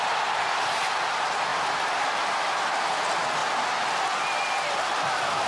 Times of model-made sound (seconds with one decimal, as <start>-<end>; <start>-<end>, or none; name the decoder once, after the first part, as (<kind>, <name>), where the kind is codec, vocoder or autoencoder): none

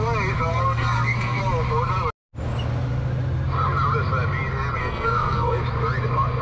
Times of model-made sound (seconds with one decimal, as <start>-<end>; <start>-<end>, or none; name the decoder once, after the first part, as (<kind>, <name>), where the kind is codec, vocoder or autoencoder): 0.5-1.4 (codec, SNAC); 4.8-5.6

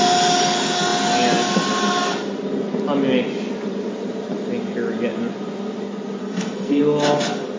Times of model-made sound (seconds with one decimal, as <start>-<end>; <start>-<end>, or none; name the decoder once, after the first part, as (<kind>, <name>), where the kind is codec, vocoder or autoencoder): 6.2-6.8 (codec, SNAC)

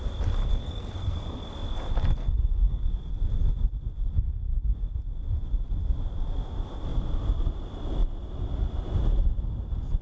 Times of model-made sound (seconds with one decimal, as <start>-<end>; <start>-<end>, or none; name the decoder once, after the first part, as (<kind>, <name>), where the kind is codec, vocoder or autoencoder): 0.4-1.5 (codec, SNAC); 2.2-3.1

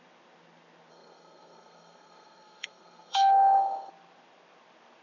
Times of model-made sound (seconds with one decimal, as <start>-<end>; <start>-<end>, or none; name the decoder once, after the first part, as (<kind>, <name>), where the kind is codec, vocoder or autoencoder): 0.9-3.9 (codec, SNAC)

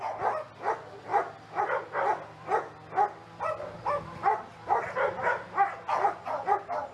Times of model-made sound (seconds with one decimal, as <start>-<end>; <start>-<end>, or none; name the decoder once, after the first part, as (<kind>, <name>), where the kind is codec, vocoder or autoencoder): none

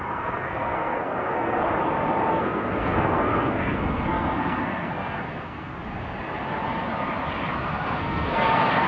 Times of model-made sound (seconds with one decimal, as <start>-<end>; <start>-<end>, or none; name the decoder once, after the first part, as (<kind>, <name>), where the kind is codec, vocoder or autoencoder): 0.0-1.6 (codec, SNAC); 2.3-5.7; 7.6-8.9